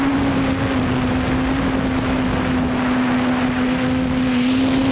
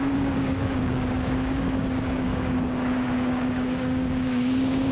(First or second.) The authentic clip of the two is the first